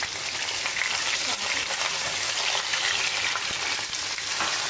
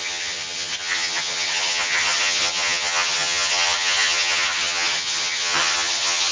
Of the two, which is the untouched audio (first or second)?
first